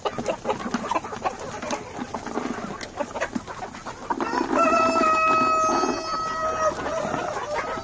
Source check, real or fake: real